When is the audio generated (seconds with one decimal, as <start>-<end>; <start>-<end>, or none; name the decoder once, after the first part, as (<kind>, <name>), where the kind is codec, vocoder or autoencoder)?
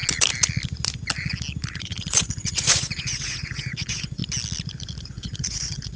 1.7-4.2 (vocoder, Vocos); 5.0-6.0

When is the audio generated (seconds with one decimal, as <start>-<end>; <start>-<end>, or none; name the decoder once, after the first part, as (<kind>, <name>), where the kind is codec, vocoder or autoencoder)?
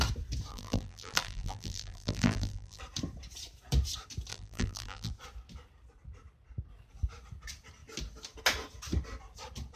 0.5-2.8 (vocoder, BigVGAN v2); 4.3-5.1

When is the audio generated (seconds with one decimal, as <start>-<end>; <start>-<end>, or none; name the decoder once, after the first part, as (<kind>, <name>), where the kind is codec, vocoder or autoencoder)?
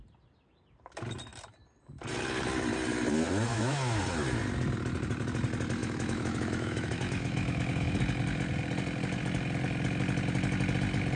3.5-4.0 (autoencoder, DAC-VAE); 5.8-8.0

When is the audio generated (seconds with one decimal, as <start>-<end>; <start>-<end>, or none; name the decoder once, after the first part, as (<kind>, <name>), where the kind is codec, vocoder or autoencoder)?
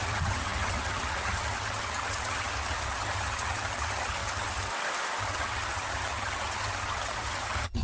0.0-4.7 (vocoder, HiFi-GAN); 5.2-7.8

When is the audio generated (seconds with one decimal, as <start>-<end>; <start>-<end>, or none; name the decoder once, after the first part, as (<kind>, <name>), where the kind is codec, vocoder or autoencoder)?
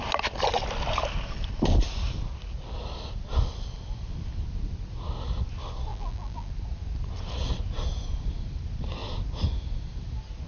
5.9-6.5 (vocoder, BigVGAN v2)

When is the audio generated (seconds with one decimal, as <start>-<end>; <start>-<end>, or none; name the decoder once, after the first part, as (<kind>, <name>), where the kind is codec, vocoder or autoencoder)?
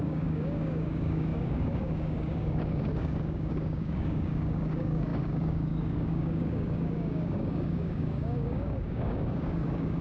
0.0-10.0 (codec, DAC)